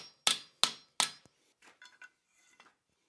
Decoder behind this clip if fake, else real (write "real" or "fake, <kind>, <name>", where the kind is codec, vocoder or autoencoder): real